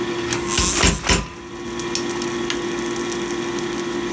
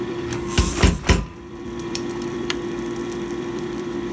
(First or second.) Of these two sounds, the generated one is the second